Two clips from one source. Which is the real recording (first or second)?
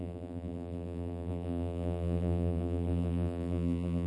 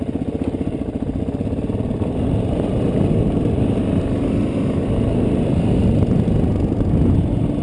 second